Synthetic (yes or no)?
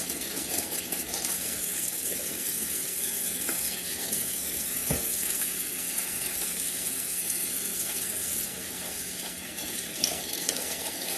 yes